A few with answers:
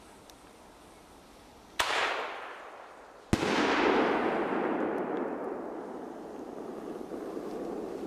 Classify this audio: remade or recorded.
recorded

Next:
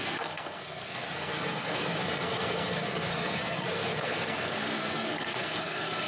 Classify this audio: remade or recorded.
remade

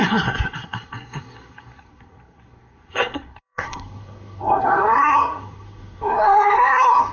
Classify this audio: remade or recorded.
remade